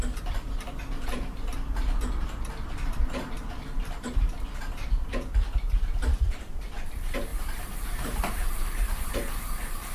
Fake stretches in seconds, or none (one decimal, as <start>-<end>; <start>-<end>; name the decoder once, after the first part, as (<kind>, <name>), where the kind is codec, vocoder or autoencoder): 0.0-9.9 (vocoder, BigVGAN v2)